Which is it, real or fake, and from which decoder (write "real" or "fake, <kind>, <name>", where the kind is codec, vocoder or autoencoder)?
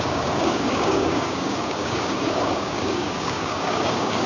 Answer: fake, codec, DAC